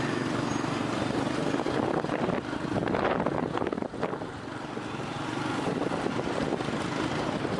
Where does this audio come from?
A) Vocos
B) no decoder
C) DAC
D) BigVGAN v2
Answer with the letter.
B